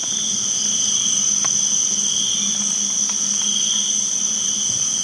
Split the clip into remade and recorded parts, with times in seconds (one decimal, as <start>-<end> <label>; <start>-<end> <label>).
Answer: 0.0-5.0 recorded